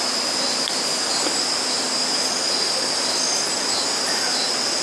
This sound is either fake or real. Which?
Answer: real